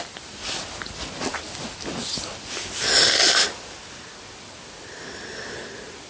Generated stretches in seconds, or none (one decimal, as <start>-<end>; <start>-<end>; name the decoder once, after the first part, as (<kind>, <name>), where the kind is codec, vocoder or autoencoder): none